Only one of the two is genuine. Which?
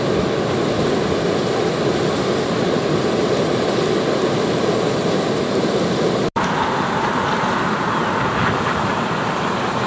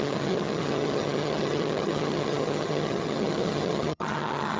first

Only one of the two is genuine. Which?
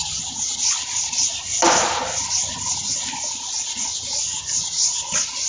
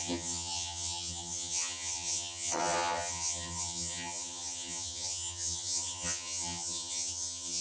first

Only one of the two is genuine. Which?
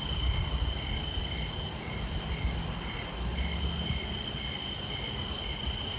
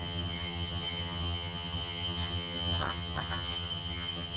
first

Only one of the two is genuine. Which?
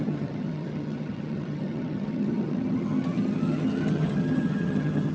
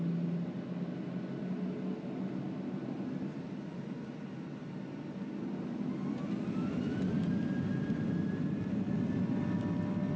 second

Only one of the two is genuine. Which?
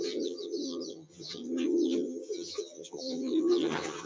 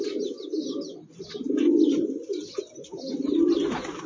second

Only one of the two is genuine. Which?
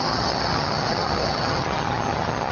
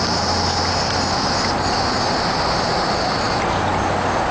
second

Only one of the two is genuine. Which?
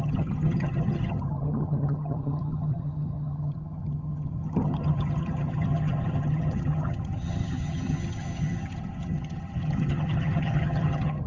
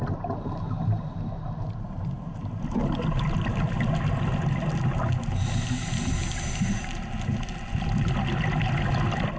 second